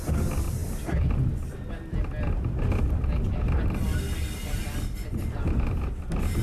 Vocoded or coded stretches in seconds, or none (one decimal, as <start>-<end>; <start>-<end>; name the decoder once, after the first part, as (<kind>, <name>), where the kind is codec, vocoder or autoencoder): none